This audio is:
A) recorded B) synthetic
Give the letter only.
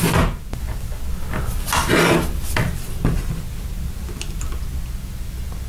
A